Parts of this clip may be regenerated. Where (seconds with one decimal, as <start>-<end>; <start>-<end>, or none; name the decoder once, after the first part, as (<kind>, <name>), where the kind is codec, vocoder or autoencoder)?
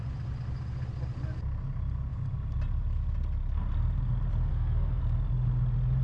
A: 4.5-5.0 (codec, SNAC)